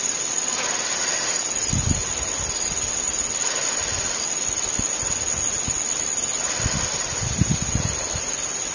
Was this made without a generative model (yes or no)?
yes